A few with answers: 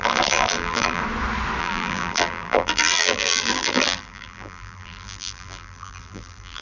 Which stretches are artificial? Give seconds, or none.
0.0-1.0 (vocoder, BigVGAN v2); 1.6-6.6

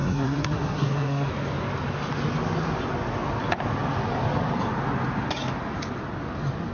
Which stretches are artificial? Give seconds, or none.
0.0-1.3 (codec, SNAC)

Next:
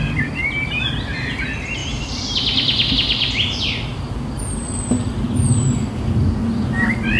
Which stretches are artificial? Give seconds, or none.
3.9-5.1 (vocoder, BigVGAN v2)

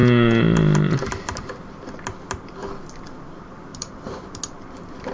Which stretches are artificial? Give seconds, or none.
3.7-4.3 (vocoder, BigVGAN v2)

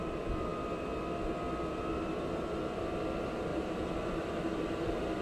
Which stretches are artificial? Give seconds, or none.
3.5-4.8 (vocoder, BigVGAN v2)

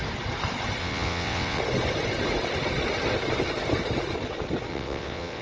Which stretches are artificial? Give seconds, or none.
0.8-1.6 (vocoder, WaveNeXt); 4.7-5.4

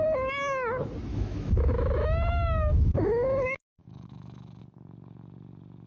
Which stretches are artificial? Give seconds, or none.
1.1-4.6 (autoencoder, DAC-VAE)

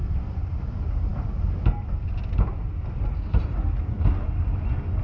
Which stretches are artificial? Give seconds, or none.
none